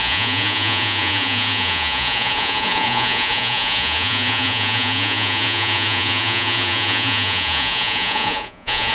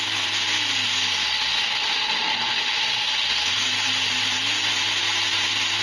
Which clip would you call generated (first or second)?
first